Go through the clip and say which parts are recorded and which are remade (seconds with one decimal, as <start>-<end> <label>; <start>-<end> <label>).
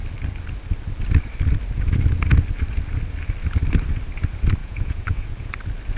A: 0.0-4.6 recorded; 4.6-5.5 remade; 5.5-6.0 recorded